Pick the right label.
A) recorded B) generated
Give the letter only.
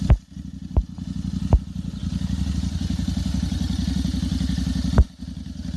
A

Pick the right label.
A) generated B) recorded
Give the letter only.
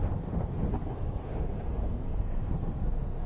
A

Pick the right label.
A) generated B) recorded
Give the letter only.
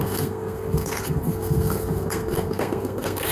A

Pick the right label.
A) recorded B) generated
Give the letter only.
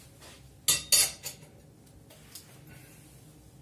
A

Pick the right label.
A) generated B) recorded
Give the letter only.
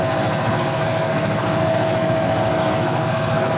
A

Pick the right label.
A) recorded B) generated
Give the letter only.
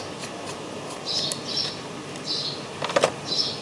A